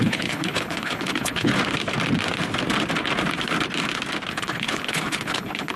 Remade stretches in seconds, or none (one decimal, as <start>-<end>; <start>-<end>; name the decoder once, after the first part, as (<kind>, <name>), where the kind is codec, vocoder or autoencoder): 0.0-1.5 (codec, HILCodec); 4.3-5.8